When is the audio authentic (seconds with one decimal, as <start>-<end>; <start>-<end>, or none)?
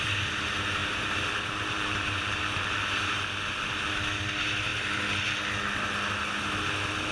0.0-0.8; 3.2-7.1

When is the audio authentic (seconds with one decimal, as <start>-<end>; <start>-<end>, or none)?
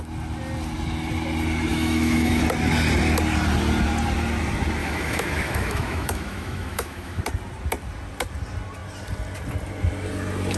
0.0-1.7; 2.4-4.8; 7.2-10.6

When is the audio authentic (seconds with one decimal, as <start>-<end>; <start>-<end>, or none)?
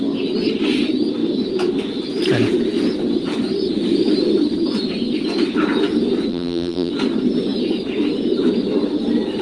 0.0-6.3; 6.9-9.4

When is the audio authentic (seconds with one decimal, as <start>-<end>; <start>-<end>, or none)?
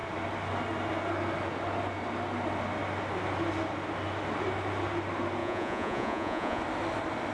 0.0-5.4; 6.6-7.3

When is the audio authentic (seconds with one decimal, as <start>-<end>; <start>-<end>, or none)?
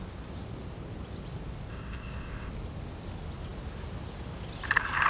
0.0-1.7; 2.5-5.1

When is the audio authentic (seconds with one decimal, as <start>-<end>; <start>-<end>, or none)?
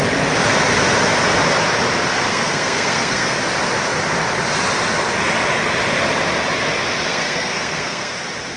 0.0-2.3; 3.4-7.1; 8.1-8.6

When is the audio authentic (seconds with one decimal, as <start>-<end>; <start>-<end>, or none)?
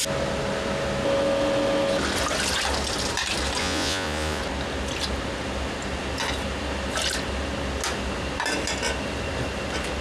0.0-3.6; 4.4-10.0